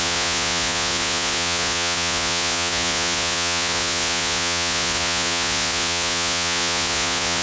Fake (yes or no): yes